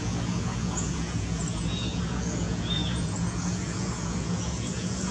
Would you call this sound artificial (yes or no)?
yes